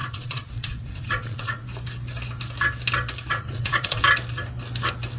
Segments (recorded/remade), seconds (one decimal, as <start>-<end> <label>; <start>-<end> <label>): 0.0-1.6 remade; 1.6-3.3 recorded; 3.3-4.0 remade; 4.0-5.2 recorded